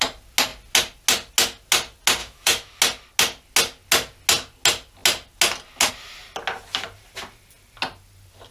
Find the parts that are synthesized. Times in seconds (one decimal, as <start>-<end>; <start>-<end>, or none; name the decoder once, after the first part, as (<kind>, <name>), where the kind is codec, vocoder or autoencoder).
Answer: 2.2-2.8 (autoencoder, DAC-VAE)